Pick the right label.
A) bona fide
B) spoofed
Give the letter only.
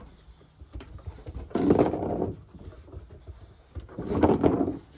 A